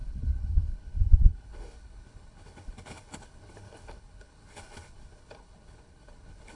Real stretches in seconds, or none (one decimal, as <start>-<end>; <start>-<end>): none